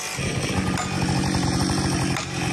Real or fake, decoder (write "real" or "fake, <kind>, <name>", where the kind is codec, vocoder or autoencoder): real